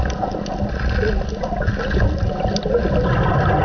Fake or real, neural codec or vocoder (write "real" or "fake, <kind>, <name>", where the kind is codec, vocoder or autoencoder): real